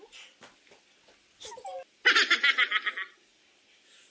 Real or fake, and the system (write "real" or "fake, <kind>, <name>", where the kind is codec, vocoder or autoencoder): real